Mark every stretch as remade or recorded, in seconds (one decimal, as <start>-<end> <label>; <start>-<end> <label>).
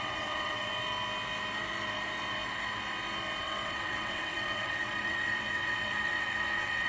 0.0-0.7 remade; 0.7-3.4 recorded; 3.4-6.9 remade